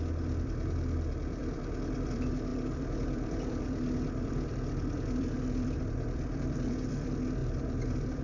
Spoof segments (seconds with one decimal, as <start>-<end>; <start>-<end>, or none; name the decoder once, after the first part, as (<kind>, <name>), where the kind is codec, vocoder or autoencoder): 0.0-8.2 (vocoder, BigVGAN v2)